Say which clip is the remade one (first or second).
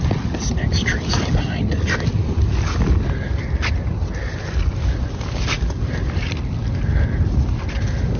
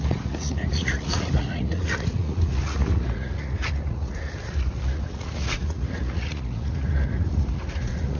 second